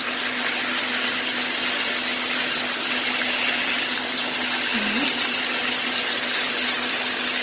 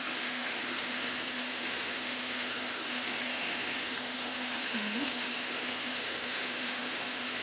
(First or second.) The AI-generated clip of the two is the second